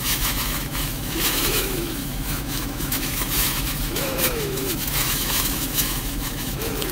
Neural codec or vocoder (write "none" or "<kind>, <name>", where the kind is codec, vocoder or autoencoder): autoencoder, DAC-VAE